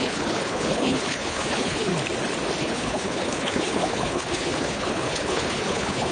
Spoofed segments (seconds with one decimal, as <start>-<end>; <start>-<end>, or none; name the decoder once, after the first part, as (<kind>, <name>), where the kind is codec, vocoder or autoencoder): 0.0-1.9 (codec, HILCodec); 2.6-6.1